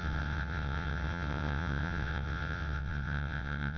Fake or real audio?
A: fake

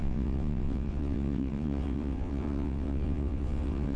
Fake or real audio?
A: fake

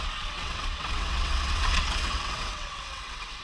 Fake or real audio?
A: fake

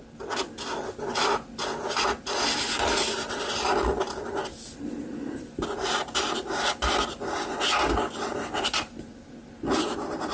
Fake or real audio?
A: real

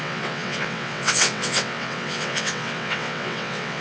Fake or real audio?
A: fake